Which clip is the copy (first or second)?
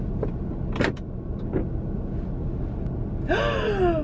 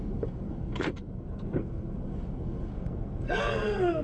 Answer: second